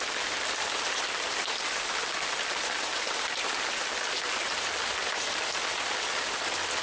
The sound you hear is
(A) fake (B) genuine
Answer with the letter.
B